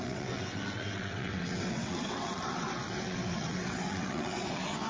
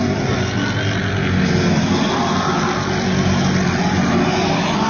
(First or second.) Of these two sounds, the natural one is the second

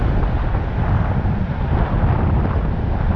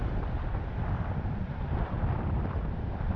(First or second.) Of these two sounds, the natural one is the first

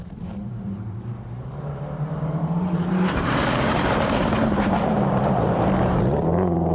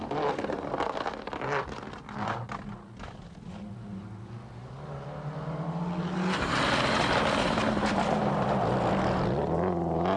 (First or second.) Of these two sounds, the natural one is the second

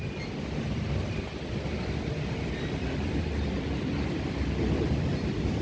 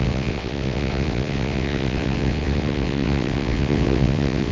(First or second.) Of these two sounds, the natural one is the first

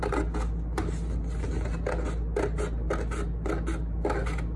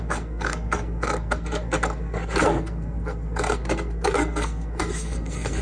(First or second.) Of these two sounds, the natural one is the first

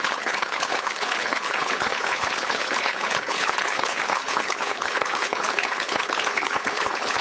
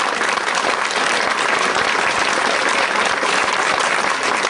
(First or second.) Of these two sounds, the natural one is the second